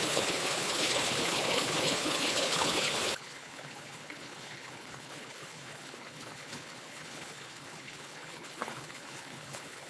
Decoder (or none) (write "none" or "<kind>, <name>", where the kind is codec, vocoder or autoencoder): codec, HILCodec